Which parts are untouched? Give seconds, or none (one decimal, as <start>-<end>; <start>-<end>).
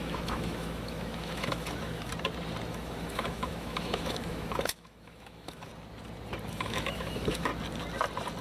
2.1-2.7; 5.7-6.5; 7.5-8.4